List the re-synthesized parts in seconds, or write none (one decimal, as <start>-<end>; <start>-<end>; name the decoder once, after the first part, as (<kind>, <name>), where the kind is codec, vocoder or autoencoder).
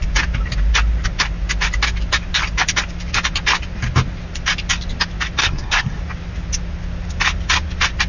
5.4-6.0 (codec, SNAC)